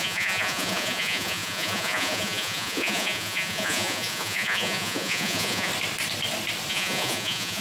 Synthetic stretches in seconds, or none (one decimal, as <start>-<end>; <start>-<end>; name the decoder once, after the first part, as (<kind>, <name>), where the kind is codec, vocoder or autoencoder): 0.0-5.7 (vocoder, Vocos); 6.7-7.6